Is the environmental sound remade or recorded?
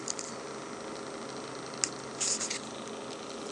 recorded